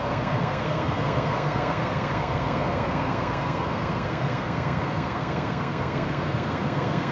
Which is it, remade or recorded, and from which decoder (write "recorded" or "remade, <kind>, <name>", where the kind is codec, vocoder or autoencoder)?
remade, codec, SNAC